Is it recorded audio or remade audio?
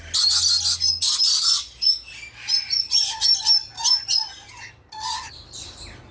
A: recorded